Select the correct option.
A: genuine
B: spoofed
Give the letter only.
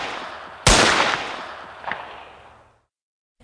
A